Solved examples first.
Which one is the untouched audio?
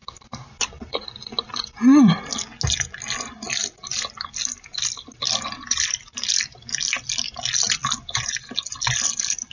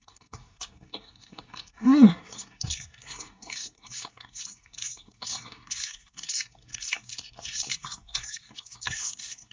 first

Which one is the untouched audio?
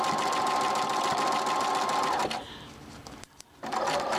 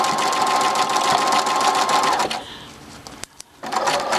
second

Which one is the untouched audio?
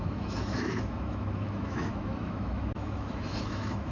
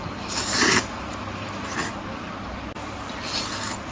second